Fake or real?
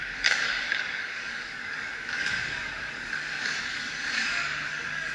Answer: fake